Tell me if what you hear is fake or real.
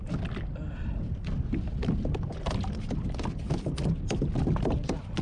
real